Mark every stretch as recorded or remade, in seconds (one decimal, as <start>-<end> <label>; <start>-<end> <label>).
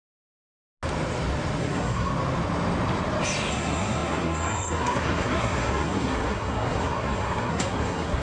0.0-1.6 recorded; 1.6-2.1 remade; 2.1-3.5 recorded; 3.5-8.2 remade